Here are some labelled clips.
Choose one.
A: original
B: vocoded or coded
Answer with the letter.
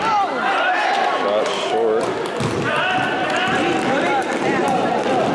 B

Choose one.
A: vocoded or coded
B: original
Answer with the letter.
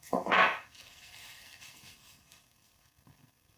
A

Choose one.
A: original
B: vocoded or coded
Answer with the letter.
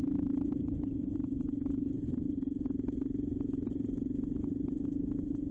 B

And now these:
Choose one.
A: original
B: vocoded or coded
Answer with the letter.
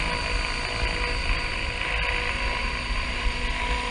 A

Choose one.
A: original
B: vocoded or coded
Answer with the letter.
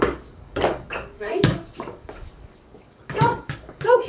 B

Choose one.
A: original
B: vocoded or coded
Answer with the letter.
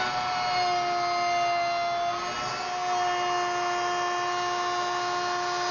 A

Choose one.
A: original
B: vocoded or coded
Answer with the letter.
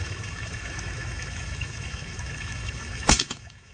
B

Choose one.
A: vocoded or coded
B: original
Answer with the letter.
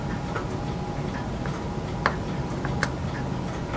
B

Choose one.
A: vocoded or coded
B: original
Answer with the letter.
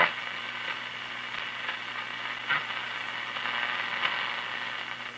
B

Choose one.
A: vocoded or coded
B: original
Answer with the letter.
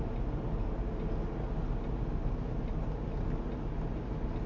B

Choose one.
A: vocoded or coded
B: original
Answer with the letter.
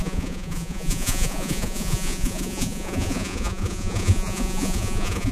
A